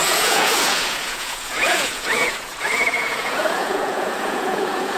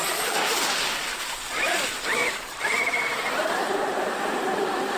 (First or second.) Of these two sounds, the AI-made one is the first